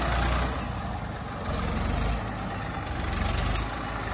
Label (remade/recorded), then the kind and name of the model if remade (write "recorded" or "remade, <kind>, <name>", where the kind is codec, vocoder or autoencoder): recorded